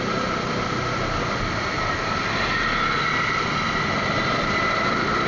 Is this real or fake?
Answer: real